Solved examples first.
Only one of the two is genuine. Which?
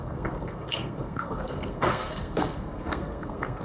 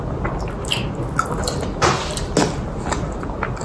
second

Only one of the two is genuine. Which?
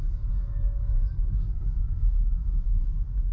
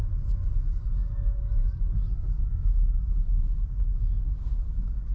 second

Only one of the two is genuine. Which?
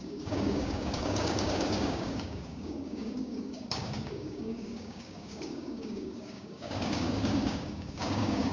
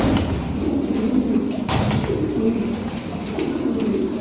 second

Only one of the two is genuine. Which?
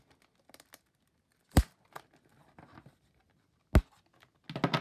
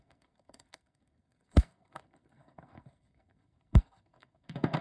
first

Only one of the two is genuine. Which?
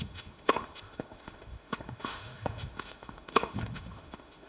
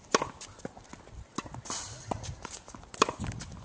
second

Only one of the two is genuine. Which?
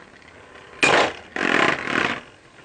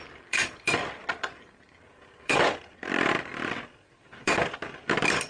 first